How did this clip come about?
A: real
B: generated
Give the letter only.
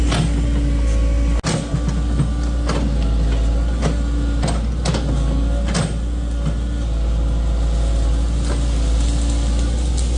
A